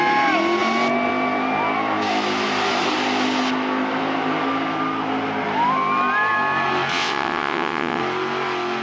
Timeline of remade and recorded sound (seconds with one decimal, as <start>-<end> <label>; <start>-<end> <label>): 0.0-6.9 recorded; 6.9-8.0 remade; 8.0-8.8 recorded